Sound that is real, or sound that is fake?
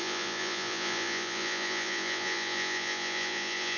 fake